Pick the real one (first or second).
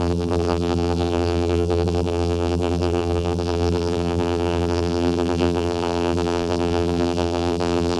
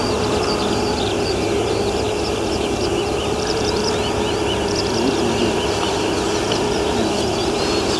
second